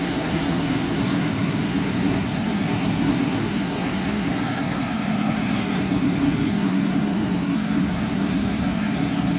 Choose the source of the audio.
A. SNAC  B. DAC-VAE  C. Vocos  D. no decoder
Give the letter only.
A